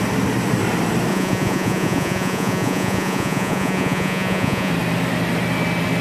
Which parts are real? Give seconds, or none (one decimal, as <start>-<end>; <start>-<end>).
0.0-1.1; 4.7-6.0